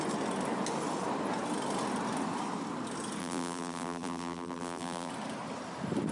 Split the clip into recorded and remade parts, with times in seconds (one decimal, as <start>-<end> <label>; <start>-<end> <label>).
0.0-3.2 recorded; 3.2-5.1 remade; 5.1-6.1 recorded